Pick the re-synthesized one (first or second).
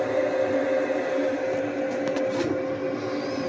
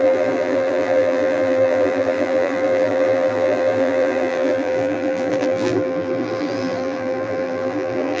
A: second